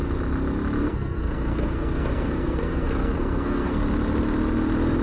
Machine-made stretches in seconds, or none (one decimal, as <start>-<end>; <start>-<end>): 0.8-3.8